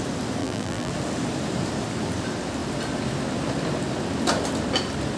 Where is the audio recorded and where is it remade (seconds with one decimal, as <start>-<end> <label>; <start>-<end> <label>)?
0.0-0.4 recorded; 0.4-0.9 remade; 0.9-5.2 recorded